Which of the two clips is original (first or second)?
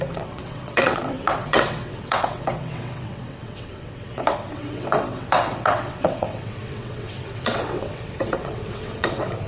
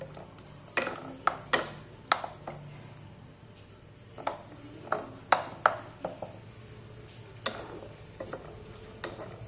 second